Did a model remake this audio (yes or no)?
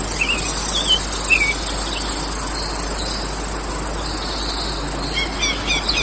no